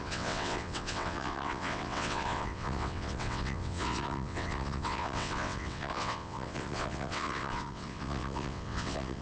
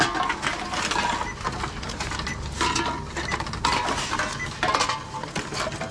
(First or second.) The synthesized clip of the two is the first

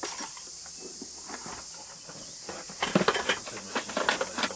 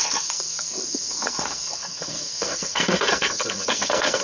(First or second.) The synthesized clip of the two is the second